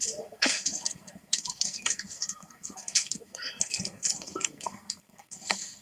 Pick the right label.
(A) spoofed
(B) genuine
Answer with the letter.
A